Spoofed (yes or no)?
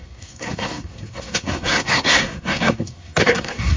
yes